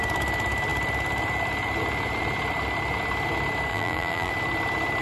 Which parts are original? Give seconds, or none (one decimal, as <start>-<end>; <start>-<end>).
0.0-3.7; 4.3-5.0